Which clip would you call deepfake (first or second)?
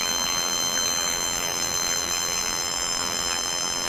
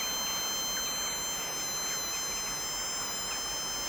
first